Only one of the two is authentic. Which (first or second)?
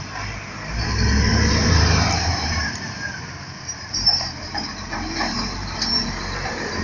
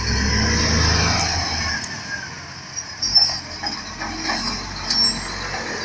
second